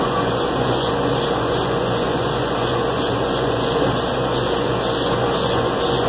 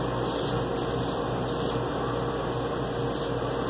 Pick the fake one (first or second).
first